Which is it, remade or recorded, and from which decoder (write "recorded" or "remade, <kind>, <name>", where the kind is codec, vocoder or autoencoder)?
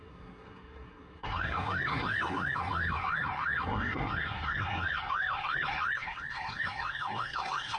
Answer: remade, codec, SNAC